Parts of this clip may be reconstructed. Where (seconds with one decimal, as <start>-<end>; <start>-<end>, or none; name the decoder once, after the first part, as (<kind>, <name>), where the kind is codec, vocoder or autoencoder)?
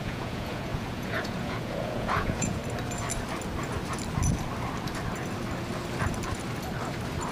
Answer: 0.0-2.6 (vocoder, Vocos)